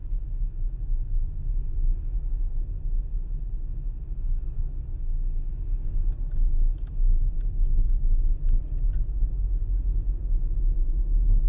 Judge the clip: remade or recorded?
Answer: recorded